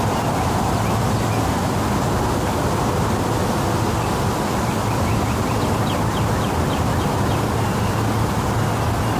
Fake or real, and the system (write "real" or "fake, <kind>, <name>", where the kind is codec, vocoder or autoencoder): real